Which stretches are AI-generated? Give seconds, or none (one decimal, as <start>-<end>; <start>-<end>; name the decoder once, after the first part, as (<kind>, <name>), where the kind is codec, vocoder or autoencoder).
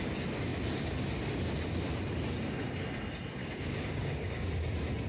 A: 3.4-4.5 (codec, DAC)